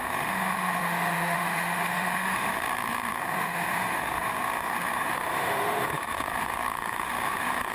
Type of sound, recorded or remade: remade